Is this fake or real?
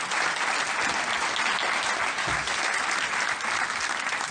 real